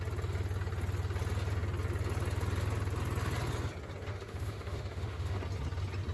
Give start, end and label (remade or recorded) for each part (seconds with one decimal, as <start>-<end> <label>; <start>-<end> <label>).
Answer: 0.0-4.1 recorded; 4.1-5.4 remade; 5.4-6.1 recorded